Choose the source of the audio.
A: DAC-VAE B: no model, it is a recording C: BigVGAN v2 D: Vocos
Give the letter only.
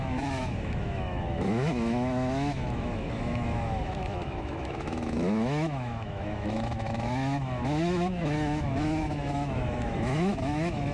A